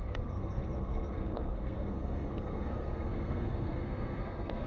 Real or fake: fake